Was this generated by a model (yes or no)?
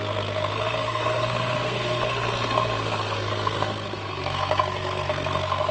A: yes